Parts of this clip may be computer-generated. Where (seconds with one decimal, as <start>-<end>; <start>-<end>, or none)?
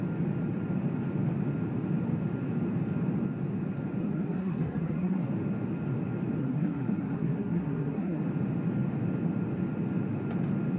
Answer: 4.0-5.3; 6.4-8.2